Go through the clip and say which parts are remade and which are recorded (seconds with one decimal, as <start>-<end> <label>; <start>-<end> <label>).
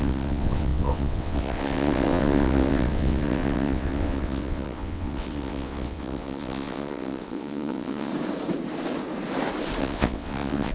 0.0-8.1 remade; 8.1-9.8 recorded; 9.8-10.7 remade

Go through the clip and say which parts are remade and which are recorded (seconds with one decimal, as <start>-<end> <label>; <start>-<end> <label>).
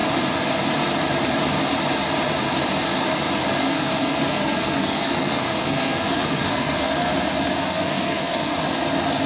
0.0-3.6 recorded; 3.6-7.1 remade; 7.1-7.6 recorded; 7.6-8.6 remade; 8.6-9.3 recorded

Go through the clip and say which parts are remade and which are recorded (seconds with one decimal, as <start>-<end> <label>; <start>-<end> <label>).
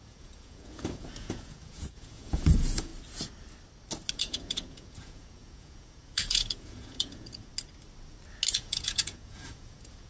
0.0-2.9 remade; 2.9-4.1 recorded; 4.1-7.5 remade; 7.5-8.5 recorded; 8.5-10.1 remade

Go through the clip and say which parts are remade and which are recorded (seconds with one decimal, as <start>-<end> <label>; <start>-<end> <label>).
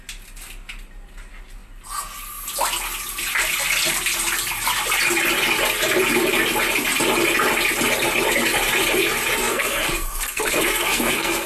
0.0-9.4 recorded; 9.4-11.5 remade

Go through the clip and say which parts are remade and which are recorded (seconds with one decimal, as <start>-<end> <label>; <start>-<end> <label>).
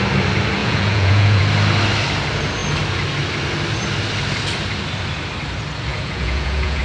0.0-0.6 recorded; 0.6-1.4 remade; 1.4-5.9 recorded; 5.9-6.8 remade